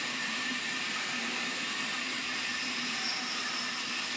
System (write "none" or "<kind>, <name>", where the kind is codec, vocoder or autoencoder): none